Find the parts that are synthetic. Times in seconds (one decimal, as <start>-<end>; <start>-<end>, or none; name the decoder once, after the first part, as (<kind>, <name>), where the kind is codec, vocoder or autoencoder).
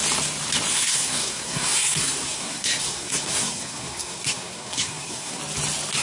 0.7-5.4 (codec, SNAC)